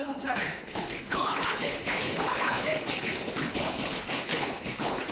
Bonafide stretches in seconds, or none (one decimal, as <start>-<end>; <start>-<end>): none